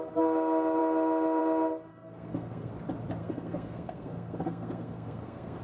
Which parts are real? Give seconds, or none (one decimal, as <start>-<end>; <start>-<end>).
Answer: 0.0-1.9; 2.7-3.2